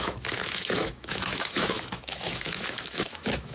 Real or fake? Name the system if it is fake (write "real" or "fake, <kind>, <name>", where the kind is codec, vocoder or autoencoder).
fake, autoencoder, DAC-VAE